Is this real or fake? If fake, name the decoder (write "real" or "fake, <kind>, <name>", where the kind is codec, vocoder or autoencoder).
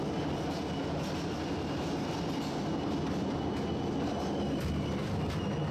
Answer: real